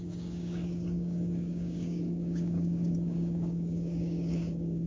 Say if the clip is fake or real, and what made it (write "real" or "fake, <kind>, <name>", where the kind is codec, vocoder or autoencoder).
fake, codec, DAC